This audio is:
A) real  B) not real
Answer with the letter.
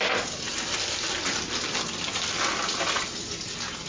A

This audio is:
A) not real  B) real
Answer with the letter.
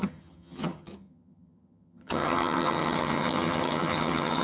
A